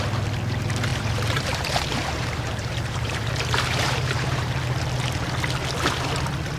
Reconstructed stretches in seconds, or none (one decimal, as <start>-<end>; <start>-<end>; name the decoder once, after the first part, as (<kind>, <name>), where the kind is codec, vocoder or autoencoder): 0.9-4.6 (vocoder, BigVGAN v2)